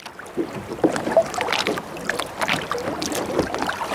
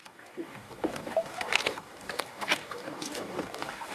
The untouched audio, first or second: first